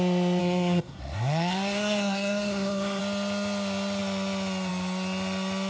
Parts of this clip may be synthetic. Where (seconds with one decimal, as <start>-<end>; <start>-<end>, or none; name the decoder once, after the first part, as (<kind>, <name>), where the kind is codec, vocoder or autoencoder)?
0.4-3.0 (codec, SNAC)